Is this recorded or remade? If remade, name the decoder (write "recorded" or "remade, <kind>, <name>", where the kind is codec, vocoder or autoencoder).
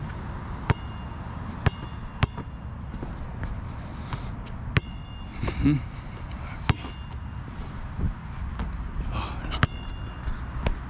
recorded